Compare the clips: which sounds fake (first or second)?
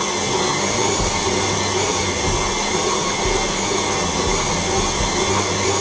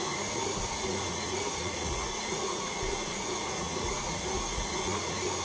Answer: second